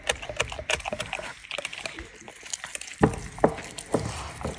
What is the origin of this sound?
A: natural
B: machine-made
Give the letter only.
A